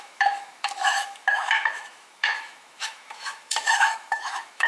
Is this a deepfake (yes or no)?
yes